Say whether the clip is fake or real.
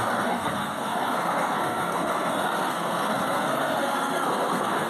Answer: fake